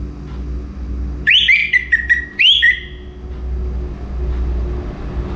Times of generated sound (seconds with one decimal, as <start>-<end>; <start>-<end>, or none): none